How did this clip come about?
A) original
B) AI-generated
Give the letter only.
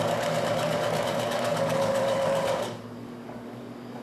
B